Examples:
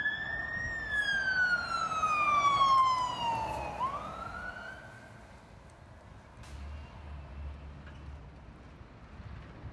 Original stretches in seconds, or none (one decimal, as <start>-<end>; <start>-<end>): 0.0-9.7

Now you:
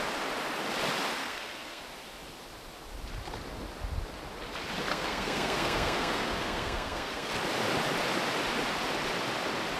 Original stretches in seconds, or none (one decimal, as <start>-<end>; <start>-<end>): 0.0-1.2; 1.8-4.9; 7.3-9.8

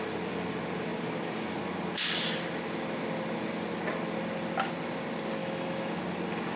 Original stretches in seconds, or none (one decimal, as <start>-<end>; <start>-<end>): 0.0-5.4; 6.0-6.6

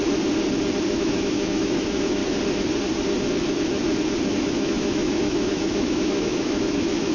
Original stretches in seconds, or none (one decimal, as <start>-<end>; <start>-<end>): 0.0-0.9; 2.2-4.3

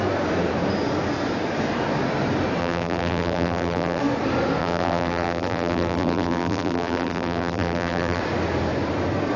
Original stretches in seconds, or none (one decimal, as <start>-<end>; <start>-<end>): 0.0-2.6; 4.0-4.6; 8.2-9.4